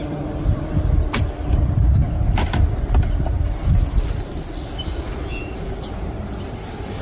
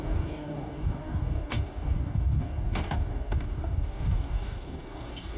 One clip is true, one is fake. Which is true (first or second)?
first